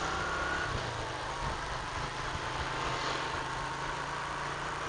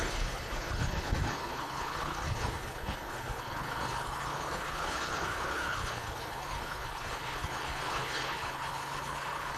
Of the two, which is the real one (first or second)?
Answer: first